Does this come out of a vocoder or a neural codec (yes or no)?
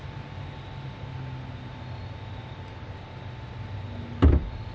no